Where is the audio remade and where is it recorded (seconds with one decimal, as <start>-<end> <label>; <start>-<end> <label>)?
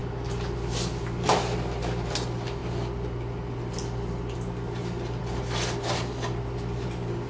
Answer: 0.0-7.3 recorded